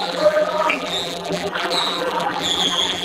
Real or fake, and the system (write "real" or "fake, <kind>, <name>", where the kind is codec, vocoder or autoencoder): fake, vocoder, BigVGAN v2